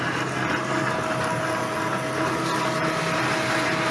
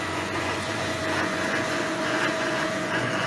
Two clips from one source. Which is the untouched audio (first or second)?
first